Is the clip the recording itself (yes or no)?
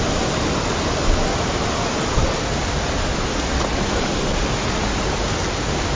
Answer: yes